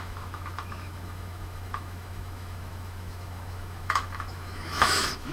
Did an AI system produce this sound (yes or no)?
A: yes